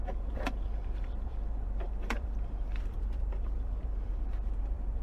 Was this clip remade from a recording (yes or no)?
yes